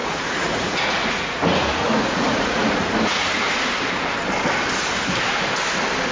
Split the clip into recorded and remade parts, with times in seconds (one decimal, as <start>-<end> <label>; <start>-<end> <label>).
0.0-3.3 remade; 3.3-6.1 recorded